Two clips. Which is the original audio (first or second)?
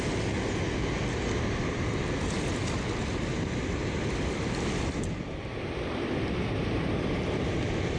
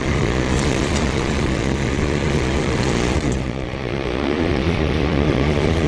first